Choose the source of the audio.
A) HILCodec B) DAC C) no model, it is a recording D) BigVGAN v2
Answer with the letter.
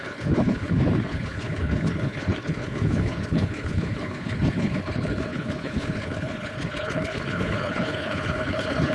A